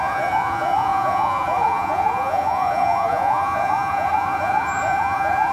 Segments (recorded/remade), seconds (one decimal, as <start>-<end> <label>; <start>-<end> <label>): 0.0-5.5 remade

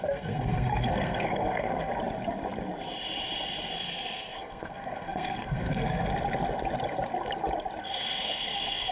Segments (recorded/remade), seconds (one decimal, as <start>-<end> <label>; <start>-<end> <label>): 0.0-1.9 remade; 1.9-3.7 recorded; 3.7-6.1 remade; 6.1-7.8 recorded; 7.8-8.9 remade

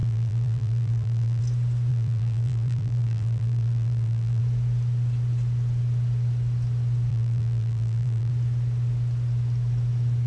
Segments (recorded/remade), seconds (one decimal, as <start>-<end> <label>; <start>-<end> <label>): 0.0-1.4 remade; 1.4-1.9 recorded; 1.9-4.4 remade; 4.4-7.1 recorded; 7.1-8.3 remade; 8.3-10.3 recorded

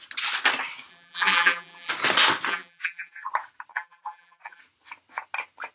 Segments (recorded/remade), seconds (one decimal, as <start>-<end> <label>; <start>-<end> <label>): 0.0-0.9 recorded; 0.9-1.9 remade; 1.9-2.5 recorded; 2.5-3.3 remade; 3.3-3.7 recorded; 3.7-4.6 remade; 4.6-5.7 recorded

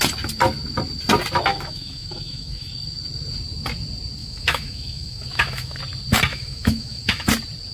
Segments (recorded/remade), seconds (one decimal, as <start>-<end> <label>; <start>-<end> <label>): 0.0-1.5 recorded; 1.5-2.7 remade; 2.7-4.2 recorded; 4.2-5.8 remade; 5.8-6.3 recorded; 6.3-7.3 remade; 7.3-7.7 recorded

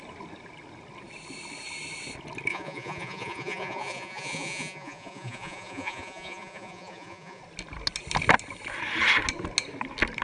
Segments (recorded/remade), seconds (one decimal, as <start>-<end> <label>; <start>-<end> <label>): 0.0-2.5 recorded; 2.5-7.4 remade; 7.4-10.2 recorded

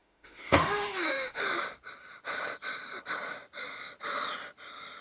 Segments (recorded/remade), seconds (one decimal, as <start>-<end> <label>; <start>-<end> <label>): 0.0-1.4 remade; 1.4-5.0 recorded

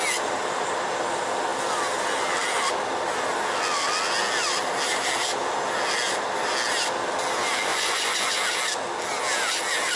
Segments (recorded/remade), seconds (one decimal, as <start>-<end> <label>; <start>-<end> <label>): 0.0-7.7 recorded; 7.7-8.3 remade; 8.3-10.0 recorded